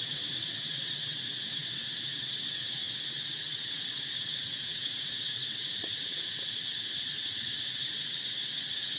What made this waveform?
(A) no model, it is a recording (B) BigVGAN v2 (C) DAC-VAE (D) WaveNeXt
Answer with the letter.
D